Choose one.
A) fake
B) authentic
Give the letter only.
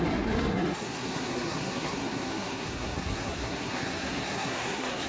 A